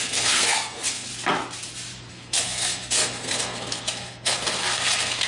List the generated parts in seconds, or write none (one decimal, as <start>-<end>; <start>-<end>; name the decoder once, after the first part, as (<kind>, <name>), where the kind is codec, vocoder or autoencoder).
0.0-1.1 (codec, SNAC); 2.1-5.3

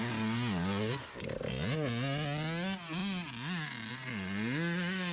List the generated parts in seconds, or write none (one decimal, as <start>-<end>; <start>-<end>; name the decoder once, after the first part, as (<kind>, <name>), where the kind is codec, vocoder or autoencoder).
none

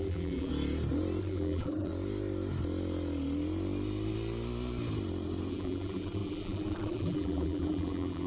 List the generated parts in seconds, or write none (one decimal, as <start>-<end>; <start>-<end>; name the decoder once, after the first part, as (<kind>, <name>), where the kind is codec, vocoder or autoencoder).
0.0-0.5 (vocoder, BigVGAN v2); 1.2-1.9; 5.5-8.3

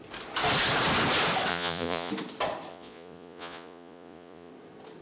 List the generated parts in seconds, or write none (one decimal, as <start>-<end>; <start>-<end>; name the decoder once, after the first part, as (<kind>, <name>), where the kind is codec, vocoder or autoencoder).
1.5-2.1 (vocoder, Vocos); 2.7-4.5